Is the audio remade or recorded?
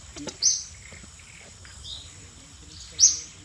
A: recorded